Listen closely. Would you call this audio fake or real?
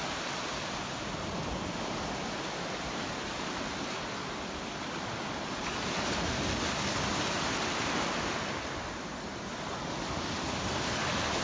real